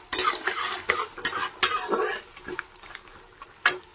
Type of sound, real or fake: real